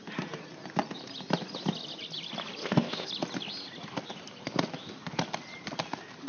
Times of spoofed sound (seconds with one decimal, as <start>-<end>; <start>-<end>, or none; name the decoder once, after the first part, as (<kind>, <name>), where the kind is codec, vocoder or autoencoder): 2.6-3.1 (codec, ZipCodec)